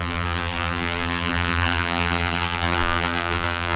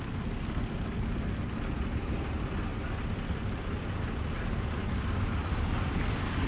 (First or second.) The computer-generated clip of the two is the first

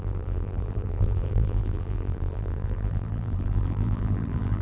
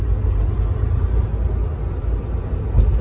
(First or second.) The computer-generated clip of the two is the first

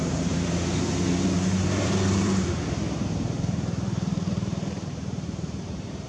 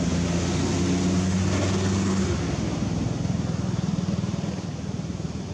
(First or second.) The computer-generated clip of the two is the first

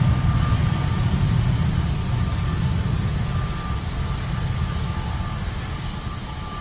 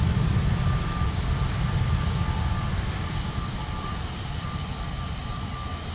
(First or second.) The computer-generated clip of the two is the second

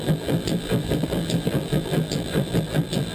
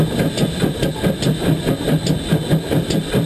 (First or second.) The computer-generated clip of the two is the first